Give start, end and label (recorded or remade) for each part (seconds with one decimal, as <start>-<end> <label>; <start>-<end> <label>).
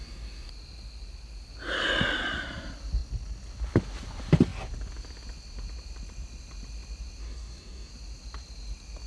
0.0-0.5 remade; 0.5-7.2 recorded; 7.2-7.9 remade; 7.9-9.1 recorded